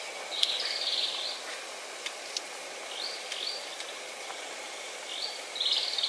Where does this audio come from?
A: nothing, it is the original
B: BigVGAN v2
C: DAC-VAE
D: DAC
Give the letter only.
A